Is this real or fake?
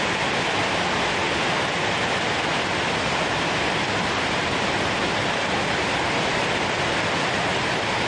fake